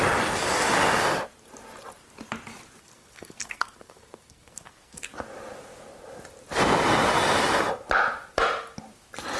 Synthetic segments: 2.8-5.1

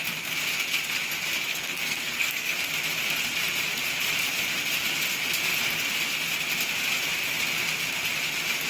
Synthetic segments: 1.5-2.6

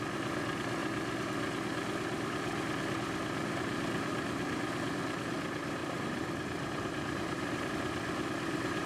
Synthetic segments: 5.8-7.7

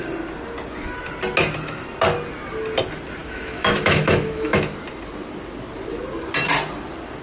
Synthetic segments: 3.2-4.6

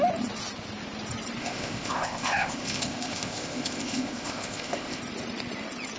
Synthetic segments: 1.4-5.0

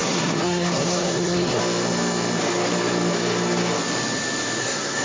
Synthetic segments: 0.0-1.6; 4.6-5.0

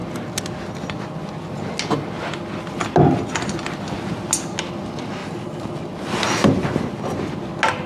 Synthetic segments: 5.2-5.7